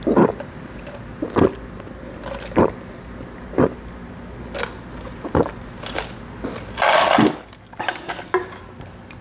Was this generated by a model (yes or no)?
no